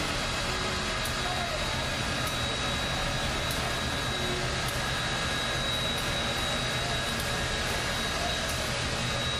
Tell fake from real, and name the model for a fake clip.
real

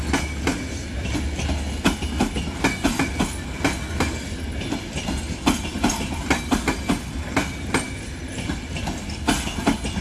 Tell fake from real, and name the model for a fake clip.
real